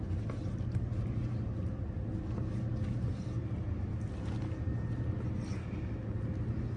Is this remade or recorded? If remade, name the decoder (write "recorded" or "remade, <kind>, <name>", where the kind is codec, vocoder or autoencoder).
recorded